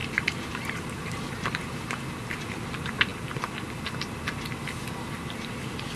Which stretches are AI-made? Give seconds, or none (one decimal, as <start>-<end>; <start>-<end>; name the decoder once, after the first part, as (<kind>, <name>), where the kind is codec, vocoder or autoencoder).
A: 0.0-2.1 (vocoder, BigVGAN v2)